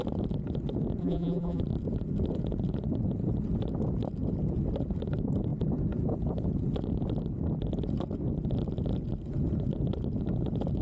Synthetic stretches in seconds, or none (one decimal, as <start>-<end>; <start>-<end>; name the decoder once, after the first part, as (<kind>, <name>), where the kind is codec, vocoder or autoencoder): 1.0-1.6 (vocoder, BigVGAN v2)